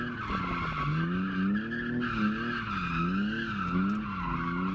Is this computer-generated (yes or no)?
no